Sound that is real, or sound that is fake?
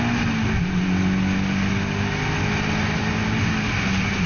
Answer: real